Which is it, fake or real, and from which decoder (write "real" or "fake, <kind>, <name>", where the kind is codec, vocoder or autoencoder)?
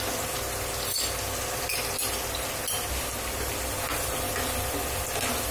real